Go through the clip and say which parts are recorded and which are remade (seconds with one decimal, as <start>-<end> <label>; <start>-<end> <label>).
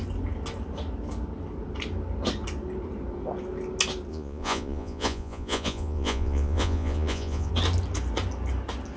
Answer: 0.0-4.1 recorded; 4.1-7.5 remade; 7.5-9.0 recorded